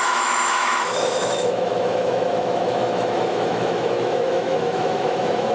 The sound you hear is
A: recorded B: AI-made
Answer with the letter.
B